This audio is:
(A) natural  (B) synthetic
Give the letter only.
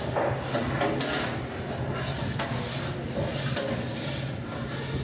A